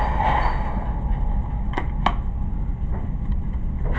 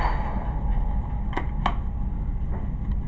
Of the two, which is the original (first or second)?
second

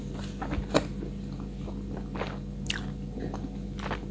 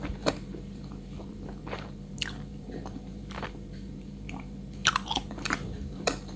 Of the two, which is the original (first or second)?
first